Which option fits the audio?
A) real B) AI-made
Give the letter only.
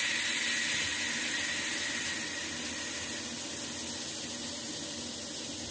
A